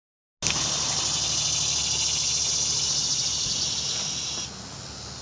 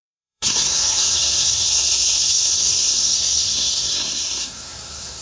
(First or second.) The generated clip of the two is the second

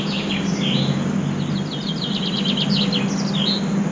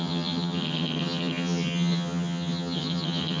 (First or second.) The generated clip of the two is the second